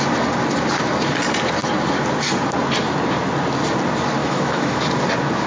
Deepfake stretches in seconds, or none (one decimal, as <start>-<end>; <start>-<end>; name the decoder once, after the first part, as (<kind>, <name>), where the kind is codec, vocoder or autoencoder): 4.2-4.8 (autoencoder, DAC-VAE)